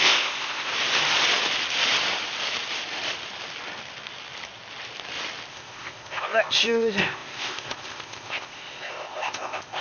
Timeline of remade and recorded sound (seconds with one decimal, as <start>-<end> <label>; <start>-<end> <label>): 0.0-0.7 remade; 0.7-5.5 recorded; 5.5-9.8 remade